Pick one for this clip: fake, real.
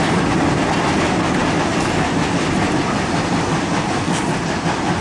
real